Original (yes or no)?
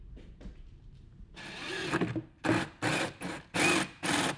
yes